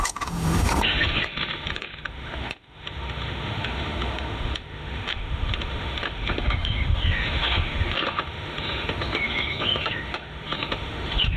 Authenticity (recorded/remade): remade